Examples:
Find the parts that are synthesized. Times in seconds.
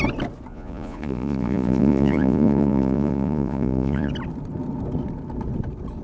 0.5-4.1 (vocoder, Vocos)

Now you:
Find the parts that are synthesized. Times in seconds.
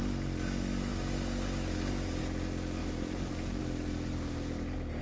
2.8-3.6 (vocoder, BigVGAN v2)